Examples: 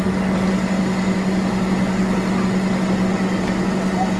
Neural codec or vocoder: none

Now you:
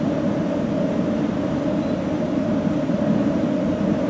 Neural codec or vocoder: none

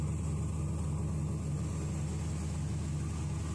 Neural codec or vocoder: none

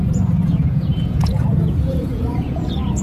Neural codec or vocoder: vocoder, Vocos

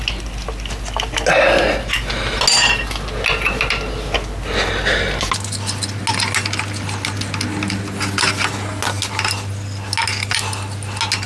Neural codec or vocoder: none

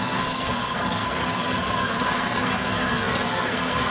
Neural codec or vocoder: codec, SNAC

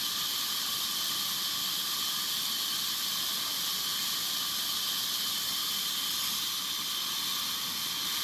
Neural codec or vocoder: none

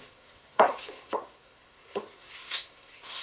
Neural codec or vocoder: codec, SNAC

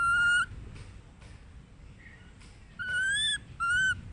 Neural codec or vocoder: none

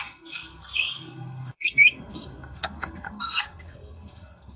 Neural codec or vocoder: codec, SNAC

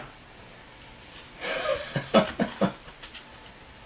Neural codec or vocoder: none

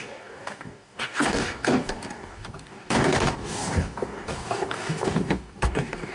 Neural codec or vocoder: codec, DAC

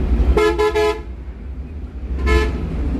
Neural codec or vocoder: none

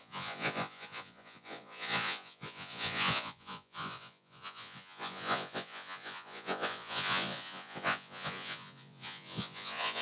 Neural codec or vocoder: vocoder, Vocos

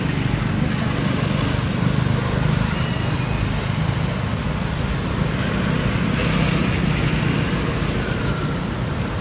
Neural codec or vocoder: none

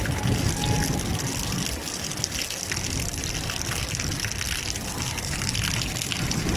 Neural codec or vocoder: none